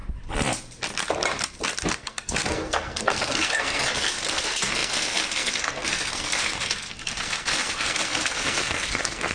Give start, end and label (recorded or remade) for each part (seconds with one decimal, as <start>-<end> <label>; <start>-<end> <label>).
0.0-1.9 recorded; 1.9-9.3 remade